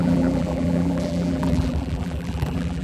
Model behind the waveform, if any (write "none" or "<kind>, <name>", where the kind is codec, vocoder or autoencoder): vocoder, BigVGAN v2